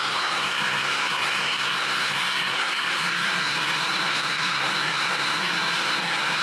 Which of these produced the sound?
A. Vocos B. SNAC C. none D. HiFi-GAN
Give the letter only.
B